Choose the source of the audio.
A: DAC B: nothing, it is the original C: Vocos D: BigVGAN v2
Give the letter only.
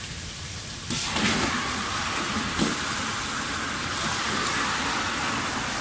B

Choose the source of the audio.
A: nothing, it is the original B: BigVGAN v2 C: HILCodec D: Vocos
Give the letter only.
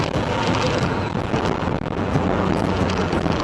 B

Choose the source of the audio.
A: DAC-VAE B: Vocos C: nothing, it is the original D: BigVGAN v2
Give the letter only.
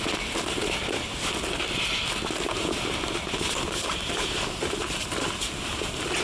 D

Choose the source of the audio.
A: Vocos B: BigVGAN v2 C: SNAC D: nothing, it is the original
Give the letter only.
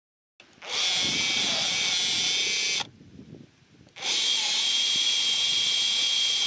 D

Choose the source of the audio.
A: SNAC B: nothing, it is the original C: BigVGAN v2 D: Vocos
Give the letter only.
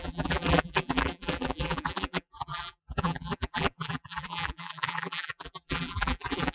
C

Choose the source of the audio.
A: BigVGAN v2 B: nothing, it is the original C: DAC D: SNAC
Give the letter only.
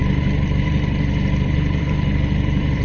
A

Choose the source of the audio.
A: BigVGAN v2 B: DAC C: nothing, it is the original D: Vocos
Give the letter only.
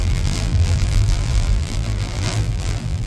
A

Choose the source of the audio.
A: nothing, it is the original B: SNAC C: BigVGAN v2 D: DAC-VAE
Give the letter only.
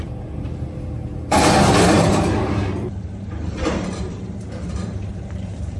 C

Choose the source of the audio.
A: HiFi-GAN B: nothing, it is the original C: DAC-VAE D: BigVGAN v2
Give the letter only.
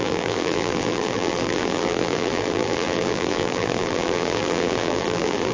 D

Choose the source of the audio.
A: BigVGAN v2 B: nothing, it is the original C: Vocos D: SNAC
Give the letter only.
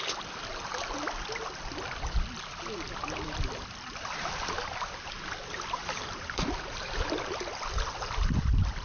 A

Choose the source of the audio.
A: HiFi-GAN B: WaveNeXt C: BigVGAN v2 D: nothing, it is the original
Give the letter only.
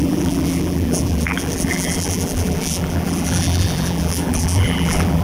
C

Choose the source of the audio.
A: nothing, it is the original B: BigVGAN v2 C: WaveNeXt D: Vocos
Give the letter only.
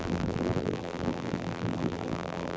B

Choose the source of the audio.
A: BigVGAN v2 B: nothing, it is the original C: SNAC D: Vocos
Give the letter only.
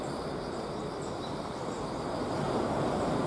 A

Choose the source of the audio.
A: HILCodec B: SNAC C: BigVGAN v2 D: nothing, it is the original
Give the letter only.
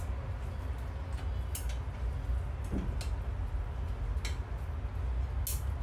D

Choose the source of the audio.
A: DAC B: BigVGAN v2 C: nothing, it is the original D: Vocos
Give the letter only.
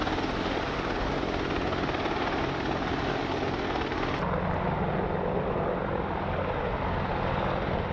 C